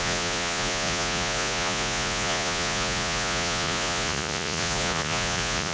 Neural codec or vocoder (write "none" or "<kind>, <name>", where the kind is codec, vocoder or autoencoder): vocoder, Vocos